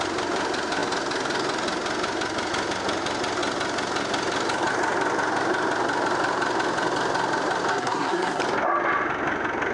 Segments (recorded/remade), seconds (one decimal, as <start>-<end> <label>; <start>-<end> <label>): 0.0-7.7 recorded; 7.7-8.4 remade; 8.4-9.7 recorded